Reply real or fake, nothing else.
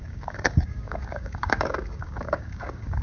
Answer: fake